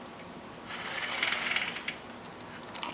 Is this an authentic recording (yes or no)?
yes